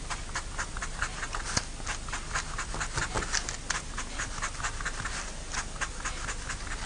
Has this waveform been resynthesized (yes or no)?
no